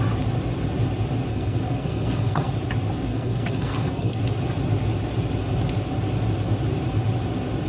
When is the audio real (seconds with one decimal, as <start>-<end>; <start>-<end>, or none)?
0.0-1.3; 2.5-3.1; 4.2-7.7